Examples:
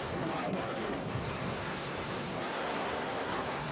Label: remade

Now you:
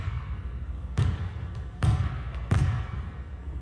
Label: remade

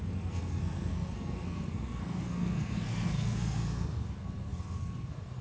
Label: remade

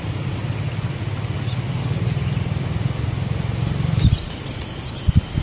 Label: recorded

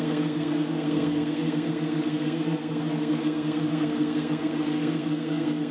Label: remade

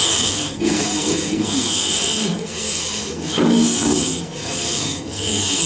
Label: remade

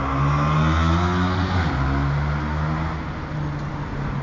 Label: recorded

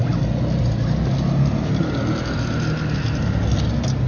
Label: recorded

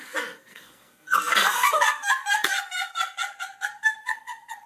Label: remade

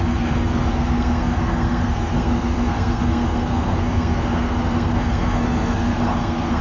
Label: remade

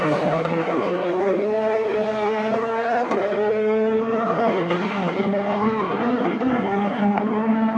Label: remade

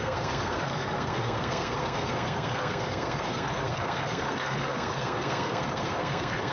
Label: remade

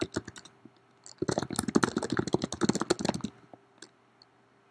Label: recorded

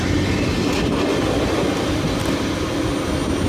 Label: recorded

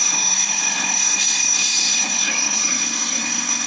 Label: remade